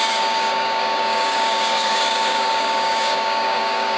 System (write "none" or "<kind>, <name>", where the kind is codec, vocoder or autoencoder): codec, DAC